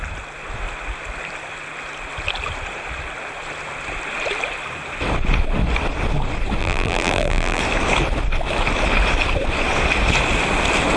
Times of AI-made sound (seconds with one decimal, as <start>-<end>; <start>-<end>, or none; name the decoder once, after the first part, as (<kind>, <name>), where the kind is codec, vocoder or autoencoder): 6.6-7.6 (vocoder, BigVGAN v2)